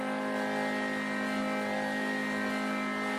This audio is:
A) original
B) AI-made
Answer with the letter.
A